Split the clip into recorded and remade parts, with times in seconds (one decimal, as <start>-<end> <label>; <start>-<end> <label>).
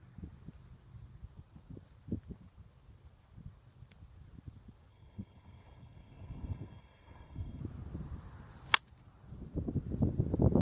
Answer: 0.0-4.9 recorded; 4.9-7.6 remade; 7.6-10.6 recorded